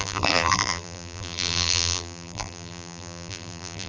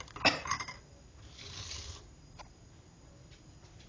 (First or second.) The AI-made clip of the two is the first